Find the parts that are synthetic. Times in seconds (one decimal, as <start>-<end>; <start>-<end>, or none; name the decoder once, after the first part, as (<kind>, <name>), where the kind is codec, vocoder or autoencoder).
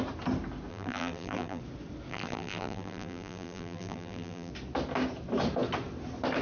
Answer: 0.7-1.6 (vocoder, BigVGAN v2); 2.1-4.5